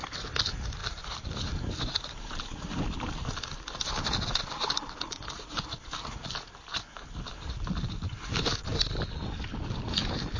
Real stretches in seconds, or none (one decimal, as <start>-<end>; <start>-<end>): 0.0-10.4